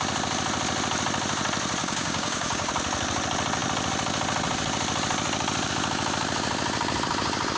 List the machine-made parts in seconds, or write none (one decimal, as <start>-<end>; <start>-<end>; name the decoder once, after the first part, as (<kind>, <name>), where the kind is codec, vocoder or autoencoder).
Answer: 1.8-2.7 (codec, DAC)